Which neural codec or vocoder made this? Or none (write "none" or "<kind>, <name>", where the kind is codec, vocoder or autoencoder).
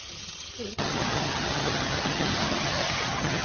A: vocoder, HiFi-GAN